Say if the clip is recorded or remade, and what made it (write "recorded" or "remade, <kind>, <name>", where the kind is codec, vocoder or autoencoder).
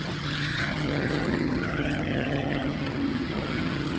remade, vocoder, HiFi-GAN